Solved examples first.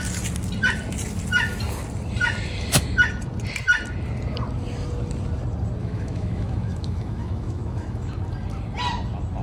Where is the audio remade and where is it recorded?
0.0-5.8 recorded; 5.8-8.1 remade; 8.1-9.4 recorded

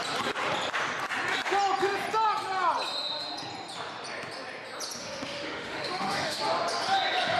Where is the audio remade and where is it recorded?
0.0-5.0 recorded; 5.0-6.4 remade; 6.4-7.4 recorded

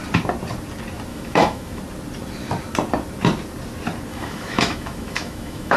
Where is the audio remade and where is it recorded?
0.0-1.1 recorded; 1.1-1.8 remade; 1.8-4.1 recorded; 4.1-5.8 remade

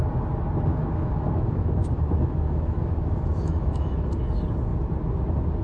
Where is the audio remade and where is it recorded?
0.0-0.7 recorded; 0.7-4.1 remade; 4.1-5.6 recorded